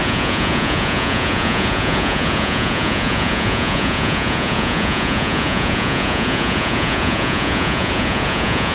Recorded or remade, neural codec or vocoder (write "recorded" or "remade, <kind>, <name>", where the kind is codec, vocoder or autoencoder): remade, vocoder, Vocos